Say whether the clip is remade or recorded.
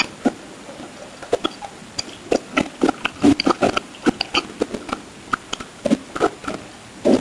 recorded